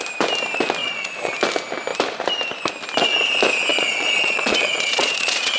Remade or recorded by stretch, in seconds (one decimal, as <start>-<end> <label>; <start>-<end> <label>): 0.0-0.8 recorded; 0.8-1.3 remade; 1.3-3.7 recorded; 3.7-5.6 remade